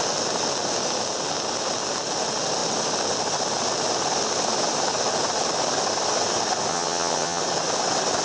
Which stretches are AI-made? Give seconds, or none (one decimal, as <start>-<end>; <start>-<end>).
6.7-7.4